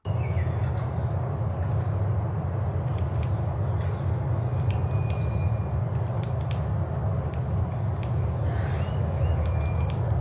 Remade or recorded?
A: recorded